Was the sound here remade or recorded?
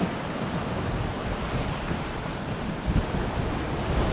recorded